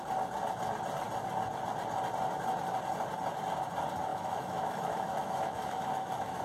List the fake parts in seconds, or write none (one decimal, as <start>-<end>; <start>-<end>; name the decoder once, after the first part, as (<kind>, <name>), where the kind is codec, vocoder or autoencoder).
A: 4.1-6.4 (autoencoder, DAC-VAE)